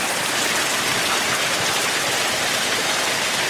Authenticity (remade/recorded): recorded